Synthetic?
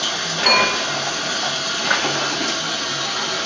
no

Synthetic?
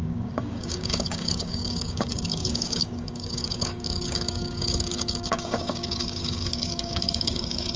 yes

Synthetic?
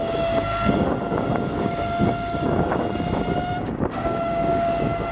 yes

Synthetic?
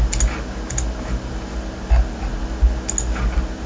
no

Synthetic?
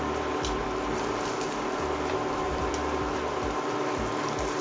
no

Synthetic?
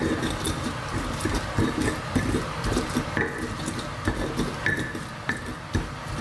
no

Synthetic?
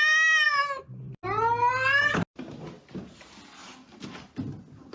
no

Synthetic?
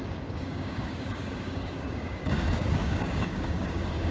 yes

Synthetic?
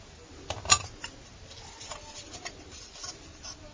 no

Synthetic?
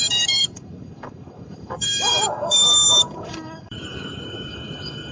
yes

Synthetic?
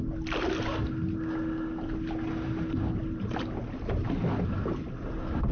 no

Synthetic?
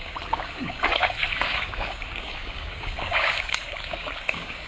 yes